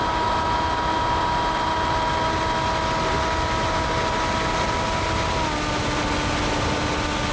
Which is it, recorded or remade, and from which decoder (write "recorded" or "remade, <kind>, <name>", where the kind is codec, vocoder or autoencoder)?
recorded